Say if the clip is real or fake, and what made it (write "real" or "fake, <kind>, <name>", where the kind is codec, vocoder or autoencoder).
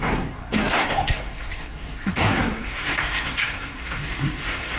fake, codec, SNAC